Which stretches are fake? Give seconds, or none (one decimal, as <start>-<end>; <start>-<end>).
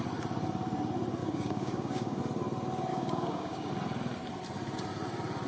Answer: 1.2-2.2; 2.9-3.7